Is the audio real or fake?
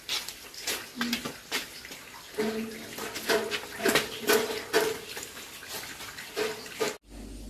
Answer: real